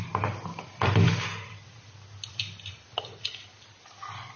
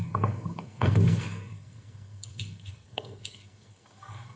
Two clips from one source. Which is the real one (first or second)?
first